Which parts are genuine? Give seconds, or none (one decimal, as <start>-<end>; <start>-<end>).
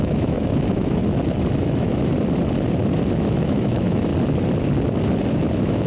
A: 1.0-1.6; 2.1-3.2; 4.1-5.3